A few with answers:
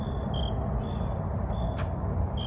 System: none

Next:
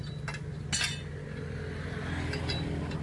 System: none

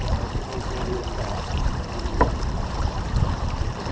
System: vocoder, BigVGAN v2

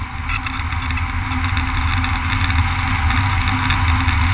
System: none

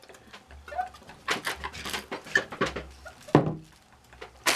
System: none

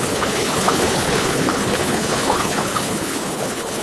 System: codec, HILCodec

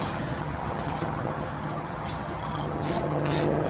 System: vocoder, HiFi-GAN